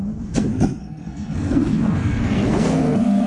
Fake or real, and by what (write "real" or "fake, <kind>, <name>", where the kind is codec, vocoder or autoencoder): fake, codec, SNAC